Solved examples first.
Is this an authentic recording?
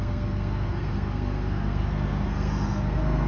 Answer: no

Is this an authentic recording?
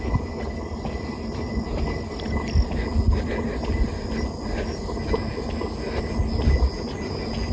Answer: yes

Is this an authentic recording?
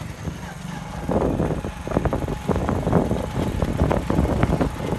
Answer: yes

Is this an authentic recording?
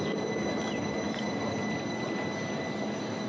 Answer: yes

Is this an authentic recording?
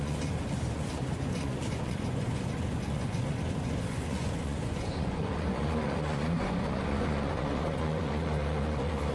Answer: no